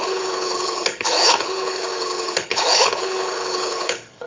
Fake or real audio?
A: fake